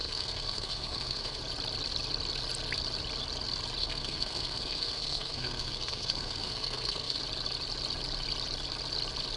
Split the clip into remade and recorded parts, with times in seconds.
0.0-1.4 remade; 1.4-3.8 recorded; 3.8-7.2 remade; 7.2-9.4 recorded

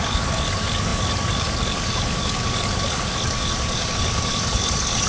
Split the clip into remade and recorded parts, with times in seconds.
0.0-5.1 remade

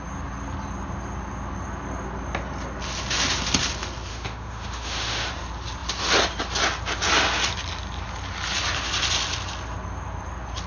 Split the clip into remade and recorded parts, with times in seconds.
0.0-4.1 recorded; 4.1-5.3 remade; 5.3-10.7 recorded

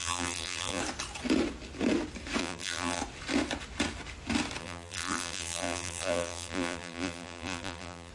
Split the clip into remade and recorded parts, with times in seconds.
0.0-0.8 remade; 0.8-2.4 recorded; 2.4-3.0 remade; 3.0-4.6 recorded; 4.6-8.1 remade

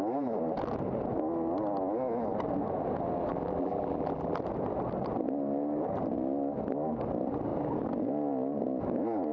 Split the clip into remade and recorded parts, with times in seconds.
0.0-3.3 recorded; 3.3-4.4 remade; 4.4-9.3 recorded

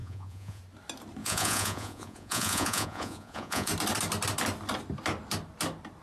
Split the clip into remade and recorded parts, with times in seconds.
0.0-0.6 remade; 0.6-1.2 recorded; 1.2-3.7 remade; 3.7-6.0 recorded

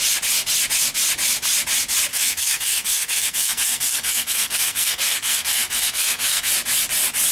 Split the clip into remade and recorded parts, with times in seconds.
0.0-2.1 recorded; 2.1-6.5 remade; 6.5-7.3 recorded